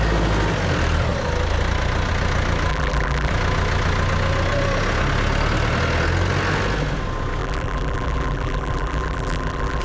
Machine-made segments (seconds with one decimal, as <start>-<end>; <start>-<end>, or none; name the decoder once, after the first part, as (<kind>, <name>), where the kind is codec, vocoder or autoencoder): 2.7-3.3 (vocoder, BigVGAN v2); 7.4-9.8

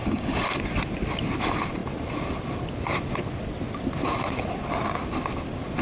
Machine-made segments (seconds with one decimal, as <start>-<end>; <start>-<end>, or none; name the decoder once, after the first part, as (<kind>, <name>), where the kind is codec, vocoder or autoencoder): 0.0-0.5 (codec, DAC)

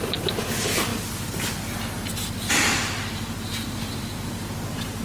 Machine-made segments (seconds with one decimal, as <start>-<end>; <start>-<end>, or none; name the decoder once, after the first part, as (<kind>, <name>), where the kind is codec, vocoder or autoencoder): none

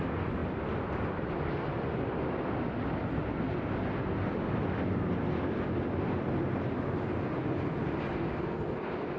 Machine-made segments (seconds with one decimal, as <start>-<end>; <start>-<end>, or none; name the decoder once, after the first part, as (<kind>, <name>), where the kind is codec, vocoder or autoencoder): none

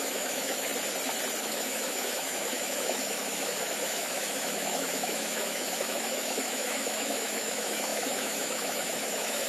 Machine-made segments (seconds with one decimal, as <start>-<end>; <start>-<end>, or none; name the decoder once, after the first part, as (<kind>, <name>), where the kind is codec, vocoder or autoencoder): 0.0-0.7 (autoencoder, DAC-VAE); 1.4-9.5